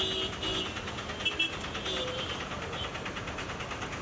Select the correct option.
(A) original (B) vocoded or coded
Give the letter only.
A